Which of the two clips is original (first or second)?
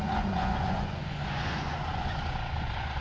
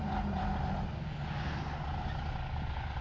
second